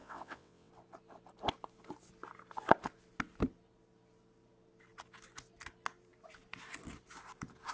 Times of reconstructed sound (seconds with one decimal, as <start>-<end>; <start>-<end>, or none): 0.0-0.7